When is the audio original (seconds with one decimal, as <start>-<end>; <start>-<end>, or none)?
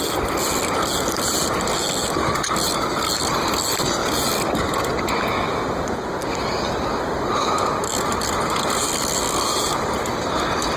0.0-10.8